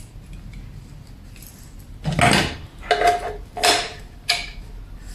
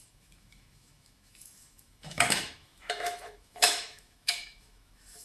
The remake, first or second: second